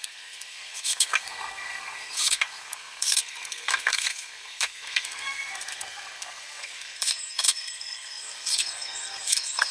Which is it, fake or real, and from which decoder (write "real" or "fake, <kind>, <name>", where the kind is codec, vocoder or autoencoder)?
fake, codec, SNAC